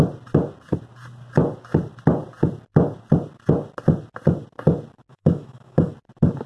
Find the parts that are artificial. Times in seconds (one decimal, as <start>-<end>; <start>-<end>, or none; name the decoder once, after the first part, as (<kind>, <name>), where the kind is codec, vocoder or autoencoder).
5.1-5.9 (autoencoder, DAC-VAE)